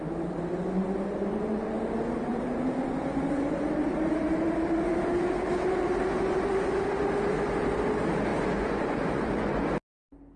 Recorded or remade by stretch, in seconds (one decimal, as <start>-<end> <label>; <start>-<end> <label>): 0.0-8.3 recorded; 8.3-9.7 remade; 9.7-10.4 recorded